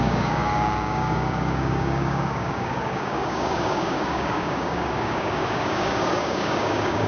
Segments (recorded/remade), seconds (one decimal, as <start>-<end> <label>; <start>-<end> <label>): 0.0-7.1 remade